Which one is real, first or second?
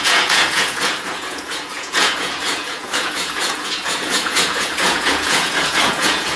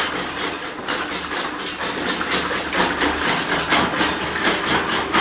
second